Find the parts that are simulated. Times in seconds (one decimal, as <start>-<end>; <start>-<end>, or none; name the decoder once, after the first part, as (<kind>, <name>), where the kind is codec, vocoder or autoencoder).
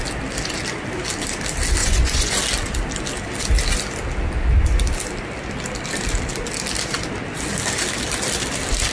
1.8-2.4 (vocoder, Vocos)